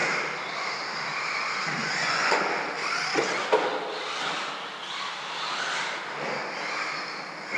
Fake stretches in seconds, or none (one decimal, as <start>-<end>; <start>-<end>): 1.8-2.4